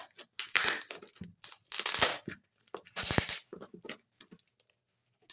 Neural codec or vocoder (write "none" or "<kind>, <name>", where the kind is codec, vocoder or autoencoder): none